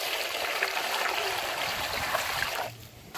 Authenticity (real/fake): real